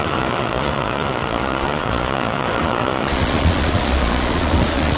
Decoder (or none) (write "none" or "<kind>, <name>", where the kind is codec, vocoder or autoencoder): vocoder, Vocos